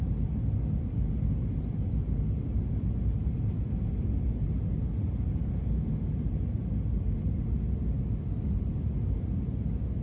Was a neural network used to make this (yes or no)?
no